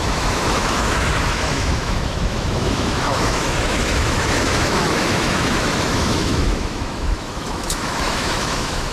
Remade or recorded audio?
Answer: remade